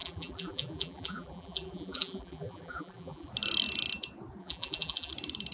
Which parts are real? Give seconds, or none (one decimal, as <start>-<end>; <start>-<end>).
3.3-4.4; 5.1-5.5